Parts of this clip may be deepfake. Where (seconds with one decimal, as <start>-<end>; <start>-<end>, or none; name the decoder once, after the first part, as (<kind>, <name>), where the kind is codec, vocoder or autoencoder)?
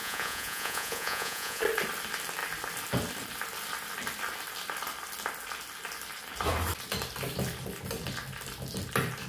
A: 0.0-1.6 (vocoder, Vocos)